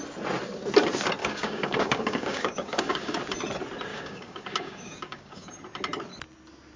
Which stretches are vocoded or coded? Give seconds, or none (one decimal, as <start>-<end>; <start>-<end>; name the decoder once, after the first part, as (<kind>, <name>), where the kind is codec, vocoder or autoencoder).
1.2-3.2 (codec, DAC); 3.9-5.5